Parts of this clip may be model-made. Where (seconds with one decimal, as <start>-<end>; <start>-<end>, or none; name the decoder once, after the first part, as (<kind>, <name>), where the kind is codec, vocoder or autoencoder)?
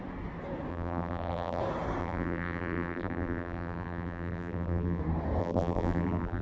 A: 0.7-1.6 (vocoder, BigVGAN v2); 2.0-5.0; 5.4-6.4